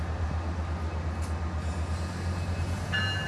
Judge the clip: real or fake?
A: real